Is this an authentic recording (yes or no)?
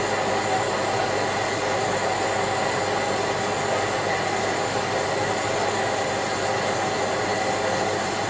yes